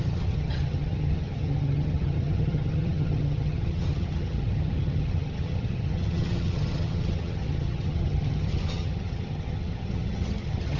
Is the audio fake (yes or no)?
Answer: yes